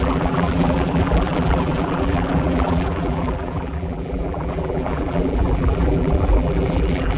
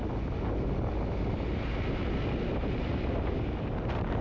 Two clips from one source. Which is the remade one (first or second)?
first